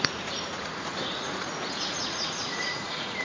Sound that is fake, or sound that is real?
fake